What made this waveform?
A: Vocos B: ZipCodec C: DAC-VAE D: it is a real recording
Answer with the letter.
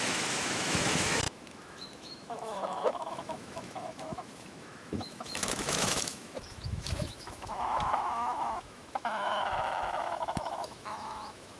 C